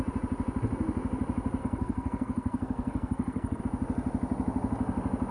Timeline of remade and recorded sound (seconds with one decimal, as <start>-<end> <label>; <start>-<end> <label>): 0.0-1.6 recorded; 1.6-3.6 remade; 3.6-5.3 recorded